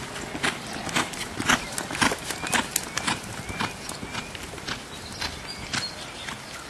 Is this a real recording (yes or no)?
yes